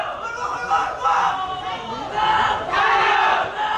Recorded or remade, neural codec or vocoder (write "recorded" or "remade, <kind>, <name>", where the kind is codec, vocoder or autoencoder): recorded